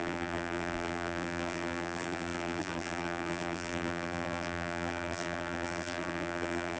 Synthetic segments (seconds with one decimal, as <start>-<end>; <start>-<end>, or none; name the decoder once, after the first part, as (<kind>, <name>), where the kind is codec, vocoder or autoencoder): 0.0-6.8 (vocoder, BigVGAN v2)